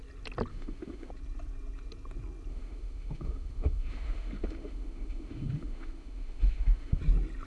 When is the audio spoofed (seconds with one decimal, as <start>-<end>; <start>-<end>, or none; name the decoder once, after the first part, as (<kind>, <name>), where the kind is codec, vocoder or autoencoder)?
0.5-1.1 (autoencoder, DAC-VAE); 2.5-7.0